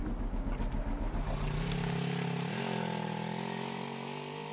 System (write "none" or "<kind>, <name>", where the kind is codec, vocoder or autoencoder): none